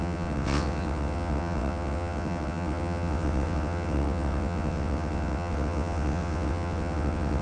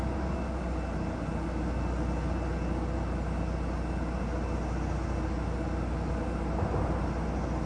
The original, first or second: second